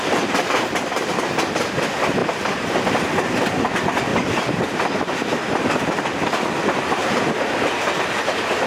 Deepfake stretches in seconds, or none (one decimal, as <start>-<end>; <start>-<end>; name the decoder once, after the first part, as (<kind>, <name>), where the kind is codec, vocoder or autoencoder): 2.2-2.9 (vocoder, BigVGAN v2); 4.1-5.7